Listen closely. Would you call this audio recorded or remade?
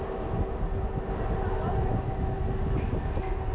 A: recorded